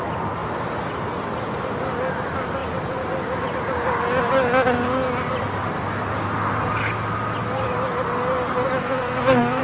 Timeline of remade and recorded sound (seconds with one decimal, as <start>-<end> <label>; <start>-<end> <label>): 0.0-8.8 recorded; 8.8-9.6 remade